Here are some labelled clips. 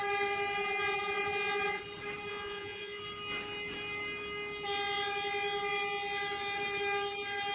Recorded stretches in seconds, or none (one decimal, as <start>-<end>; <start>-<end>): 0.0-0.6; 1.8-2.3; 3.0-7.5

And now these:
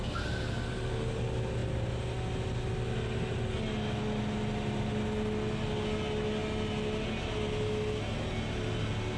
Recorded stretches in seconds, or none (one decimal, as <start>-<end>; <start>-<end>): 0.0-9.2

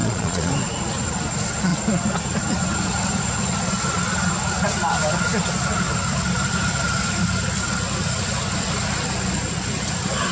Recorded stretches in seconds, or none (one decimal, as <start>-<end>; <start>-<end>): 0.5-10.3

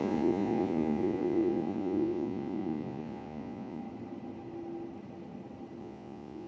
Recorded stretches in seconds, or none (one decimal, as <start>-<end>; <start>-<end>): 3.8-5.8